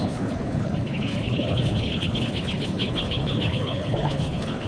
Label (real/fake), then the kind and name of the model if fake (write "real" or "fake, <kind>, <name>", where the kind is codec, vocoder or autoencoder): fake, codec, HILCodec